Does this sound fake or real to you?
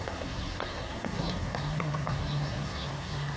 fake